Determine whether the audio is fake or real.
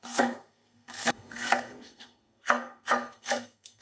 fake